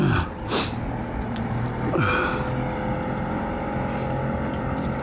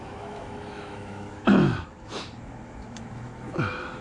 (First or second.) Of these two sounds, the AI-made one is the second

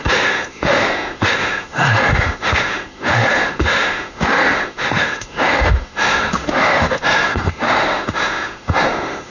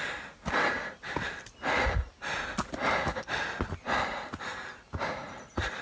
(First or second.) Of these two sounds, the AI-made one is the first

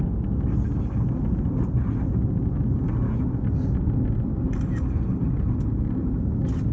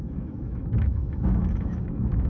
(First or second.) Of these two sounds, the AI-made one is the second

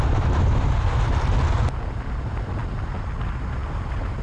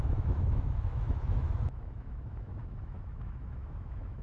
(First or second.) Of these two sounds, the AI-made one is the second